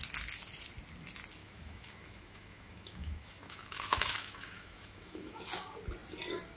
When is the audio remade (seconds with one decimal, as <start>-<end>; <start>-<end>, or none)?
1.4-5.4